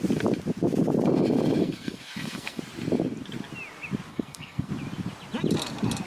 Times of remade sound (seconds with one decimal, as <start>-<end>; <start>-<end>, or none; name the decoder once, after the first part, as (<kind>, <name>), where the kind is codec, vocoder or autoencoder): 1.6-2.6 (codec, SNAC); 4.1-4.7